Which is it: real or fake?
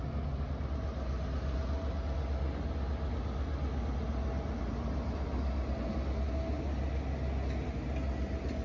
real